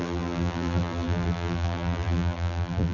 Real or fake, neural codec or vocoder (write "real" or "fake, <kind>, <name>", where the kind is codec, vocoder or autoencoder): fake, vocoder, BigVGAN v2